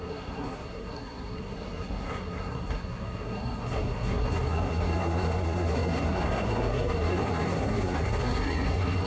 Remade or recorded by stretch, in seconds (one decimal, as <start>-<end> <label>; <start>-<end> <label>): 0.0-9.1 remade